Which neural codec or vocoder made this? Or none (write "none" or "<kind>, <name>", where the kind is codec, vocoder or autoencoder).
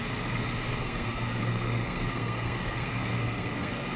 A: codec, SNAC